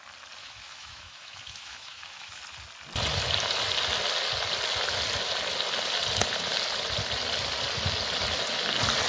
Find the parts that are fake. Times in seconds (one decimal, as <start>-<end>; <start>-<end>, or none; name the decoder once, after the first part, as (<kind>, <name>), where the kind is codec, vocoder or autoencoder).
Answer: 0.4-2.4 (autoencoder, DAC-VAE)